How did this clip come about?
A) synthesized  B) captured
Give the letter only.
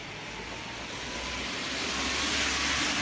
B